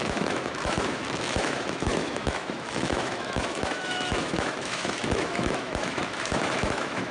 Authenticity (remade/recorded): remade